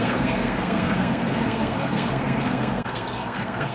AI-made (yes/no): yes